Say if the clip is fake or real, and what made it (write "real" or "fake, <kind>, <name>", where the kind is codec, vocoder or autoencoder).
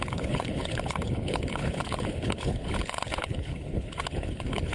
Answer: fake, codec, HILCodec